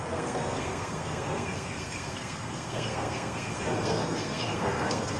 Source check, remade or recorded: remade